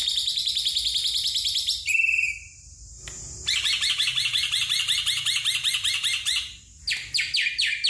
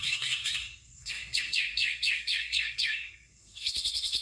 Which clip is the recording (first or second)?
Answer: first